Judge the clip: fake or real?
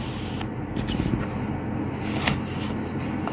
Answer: real